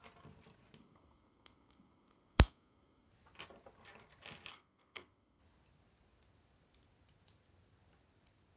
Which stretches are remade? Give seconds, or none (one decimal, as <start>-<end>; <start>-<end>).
0.8-3.1; 4.5-5.4